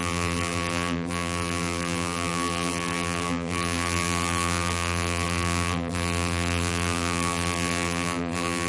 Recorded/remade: remade